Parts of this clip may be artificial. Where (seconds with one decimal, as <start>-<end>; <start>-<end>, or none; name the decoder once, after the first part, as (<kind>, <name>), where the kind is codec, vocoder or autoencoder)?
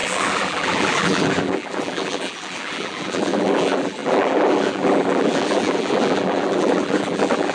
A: 0.0-7.5 (vocoder, BigVGAN v2)